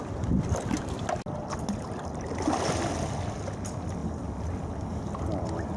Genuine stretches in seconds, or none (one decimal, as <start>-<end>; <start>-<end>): 0.0-5.8